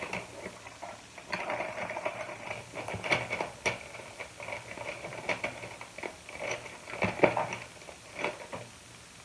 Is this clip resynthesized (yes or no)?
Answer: no